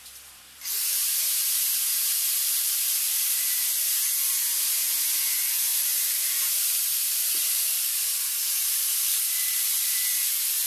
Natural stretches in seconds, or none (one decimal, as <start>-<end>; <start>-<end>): none